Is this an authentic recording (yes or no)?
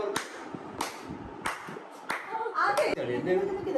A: yes